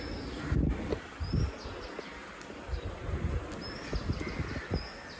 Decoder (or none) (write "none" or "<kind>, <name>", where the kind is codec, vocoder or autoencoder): none